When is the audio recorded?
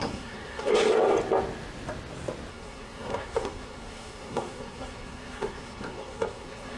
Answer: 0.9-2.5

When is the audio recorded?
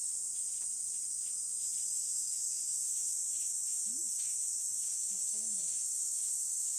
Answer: 0.4-1.9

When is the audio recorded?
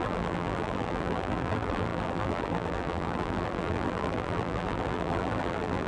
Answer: none